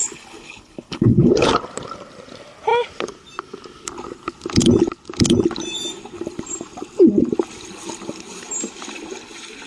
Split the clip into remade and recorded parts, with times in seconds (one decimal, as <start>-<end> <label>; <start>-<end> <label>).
0.0-1.5 remade; 1.5-9.7 recorded